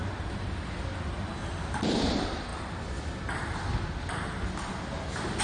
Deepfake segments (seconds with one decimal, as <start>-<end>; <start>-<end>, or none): 1.5-2.5